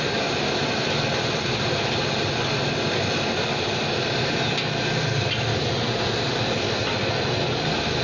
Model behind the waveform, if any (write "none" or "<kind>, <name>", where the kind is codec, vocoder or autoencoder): none